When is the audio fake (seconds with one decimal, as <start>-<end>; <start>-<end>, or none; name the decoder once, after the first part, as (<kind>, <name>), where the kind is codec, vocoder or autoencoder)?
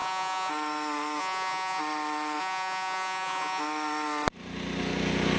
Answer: 0.0-0.5 (vocoder, Vocos); 1.2-1.8; 2.4-3.6